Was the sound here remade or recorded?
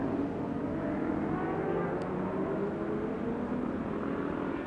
recorded